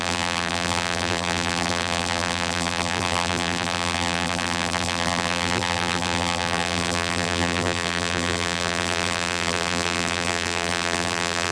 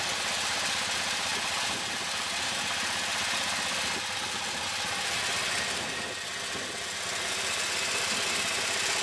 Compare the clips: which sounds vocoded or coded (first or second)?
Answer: first